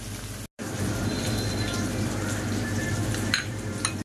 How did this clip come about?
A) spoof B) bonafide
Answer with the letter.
B